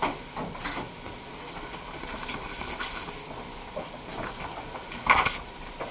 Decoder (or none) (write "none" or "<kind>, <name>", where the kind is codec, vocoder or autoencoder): none